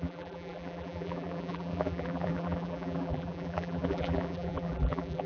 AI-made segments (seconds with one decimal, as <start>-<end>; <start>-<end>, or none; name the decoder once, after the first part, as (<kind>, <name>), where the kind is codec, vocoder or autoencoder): 0.0-5.3 (vocoder, BigVGAN v2)